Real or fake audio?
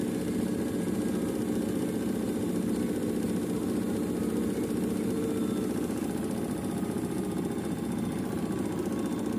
real